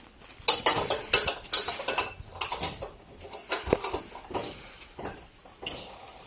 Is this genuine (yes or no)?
yes